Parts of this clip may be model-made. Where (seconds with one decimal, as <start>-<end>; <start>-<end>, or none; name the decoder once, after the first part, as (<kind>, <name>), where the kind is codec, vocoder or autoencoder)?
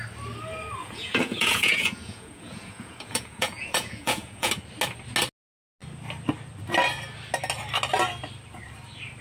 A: 0.8-4.5 (vocoder, Vocos)